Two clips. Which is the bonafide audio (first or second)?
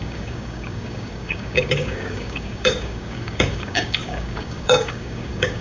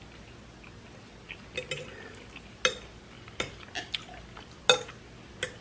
second